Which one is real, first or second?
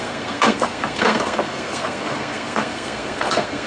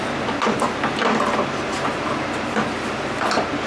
second